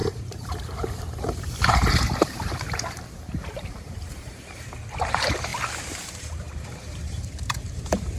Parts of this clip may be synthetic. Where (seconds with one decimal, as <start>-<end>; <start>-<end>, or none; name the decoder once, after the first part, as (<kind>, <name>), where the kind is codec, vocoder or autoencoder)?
0.0-8.2 (vocoder, BigVGAN v2)